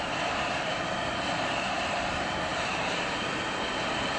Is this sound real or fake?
fake